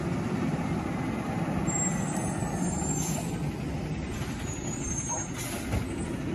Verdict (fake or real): real